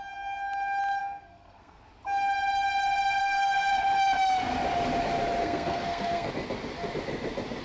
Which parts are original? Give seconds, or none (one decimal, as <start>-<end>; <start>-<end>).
0.0-1.0; 1.8-3.2; 3.7-5.4; 6.3-7.6